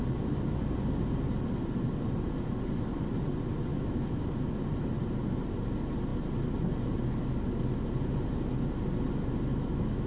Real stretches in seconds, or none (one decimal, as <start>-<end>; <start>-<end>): 0.0-3.7; 4.6-9.5